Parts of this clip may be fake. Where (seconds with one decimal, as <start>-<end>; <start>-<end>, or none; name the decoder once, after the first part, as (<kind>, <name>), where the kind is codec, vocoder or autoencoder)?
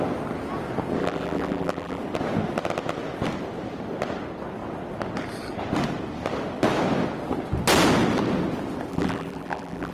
1.0-2.0 (vocoder, BigVGAN v2); 8.9-9.9